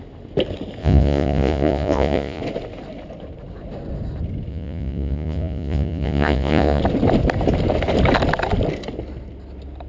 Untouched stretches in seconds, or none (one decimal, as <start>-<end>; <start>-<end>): 0.0-0.8; 2.4-4.5; 6.8-9.9